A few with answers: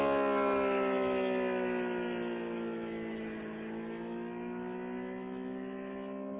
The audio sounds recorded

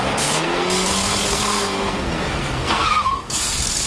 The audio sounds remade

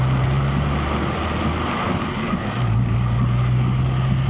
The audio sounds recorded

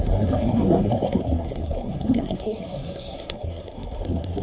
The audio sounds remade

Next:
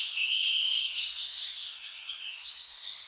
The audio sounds remade